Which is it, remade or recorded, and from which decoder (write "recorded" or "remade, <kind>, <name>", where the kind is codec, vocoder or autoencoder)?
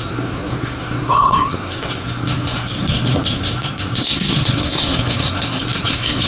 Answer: remade, codec, SNAC